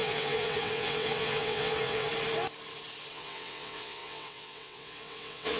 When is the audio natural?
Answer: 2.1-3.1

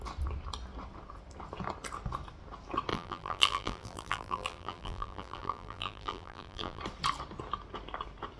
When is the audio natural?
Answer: 0.0-2.9; 6.8-8.4

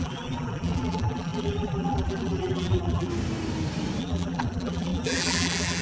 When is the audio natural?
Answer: 3.1-4.0

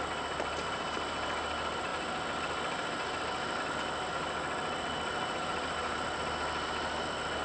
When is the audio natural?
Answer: 0.0-7.4

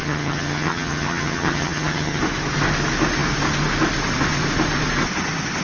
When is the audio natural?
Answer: 2.2-5.6

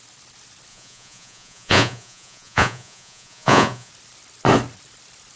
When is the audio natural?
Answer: 0.0-0.7; 3.9-5.4

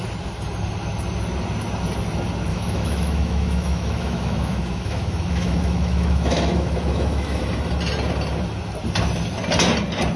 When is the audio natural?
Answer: 0.0-2.5; 7.4-10.2

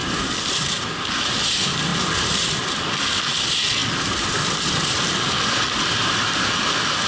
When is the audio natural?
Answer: 0.0-7.1